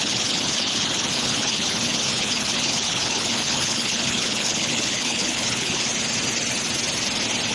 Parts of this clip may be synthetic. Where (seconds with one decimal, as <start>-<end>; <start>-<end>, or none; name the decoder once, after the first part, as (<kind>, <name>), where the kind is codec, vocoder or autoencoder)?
0.0-5.9 (codec, HILCodec)